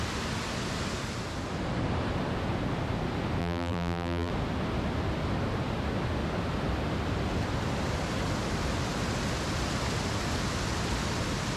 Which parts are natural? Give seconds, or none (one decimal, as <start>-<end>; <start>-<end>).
0.0-3.4; 4.3-11.6